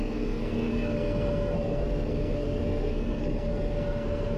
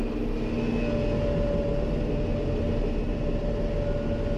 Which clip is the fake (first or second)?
first